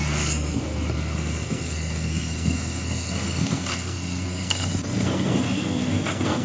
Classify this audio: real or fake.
fake